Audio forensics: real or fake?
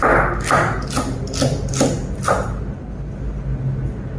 real